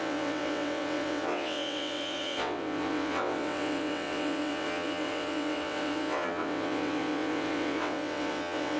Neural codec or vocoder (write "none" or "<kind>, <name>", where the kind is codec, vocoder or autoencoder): vocoder, WaveNeXt